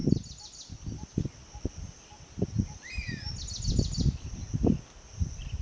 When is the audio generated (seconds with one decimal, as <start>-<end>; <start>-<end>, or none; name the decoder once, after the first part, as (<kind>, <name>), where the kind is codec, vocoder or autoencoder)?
none